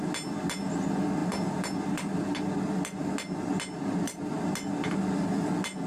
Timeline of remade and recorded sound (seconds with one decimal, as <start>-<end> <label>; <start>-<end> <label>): 0.0-5.9 recorded

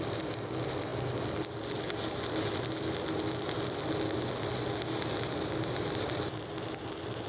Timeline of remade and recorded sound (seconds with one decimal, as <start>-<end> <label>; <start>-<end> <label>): 0.0-7.3 recorded

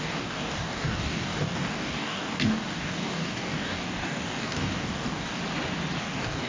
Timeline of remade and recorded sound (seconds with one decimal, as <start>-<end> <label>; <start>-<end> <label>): 0.0-5.4 remade; 5.4-6.0 recorded; 6.0-6.5 remade

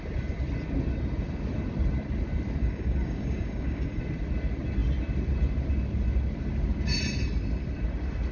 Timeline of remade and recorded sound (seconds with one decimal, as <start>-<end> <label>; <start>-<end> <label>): 0.0-2.6 recorded; 2.6-4.0 remade; 4.0-8.3 recorded

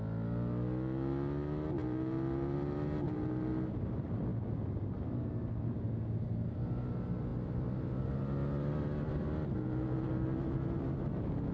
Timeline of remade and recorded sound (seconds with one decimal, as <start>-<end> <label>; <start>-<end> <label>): 0.0-11.5 recorded

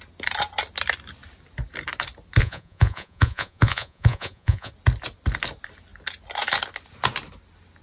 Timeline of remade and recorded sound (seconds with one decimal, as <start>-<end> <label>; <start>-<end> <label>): 0.0-2.4 recorded; 2.4-4.7 remade; 4.7-7.8 recorded

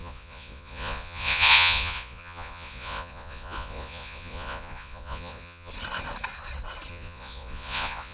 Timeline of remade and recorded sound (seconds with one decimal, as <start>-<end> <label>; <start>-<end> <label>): 0.0-5.7 remade; 5.7-6.9 recorded; 6.9-8.1 remade